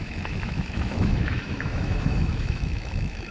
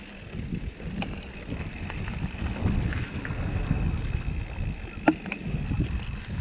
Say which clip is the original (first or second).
second